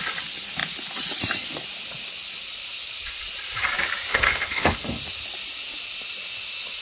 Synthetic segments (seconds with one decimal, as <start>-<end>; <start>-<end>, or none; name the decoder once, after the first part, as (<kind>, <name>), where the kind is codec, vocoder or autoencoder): 4.1-5.0 (codec, HILCodec)